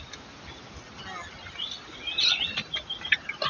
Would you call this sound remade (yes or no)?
no